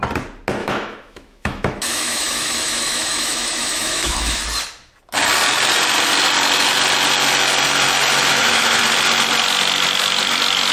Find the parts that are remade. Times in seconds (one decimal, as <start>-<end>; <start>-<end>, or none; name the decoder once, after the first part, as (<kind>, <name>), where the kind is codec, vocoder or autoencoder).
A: 0.6-4.4 (autoencoder, DAC-VAE); 8.3-8.8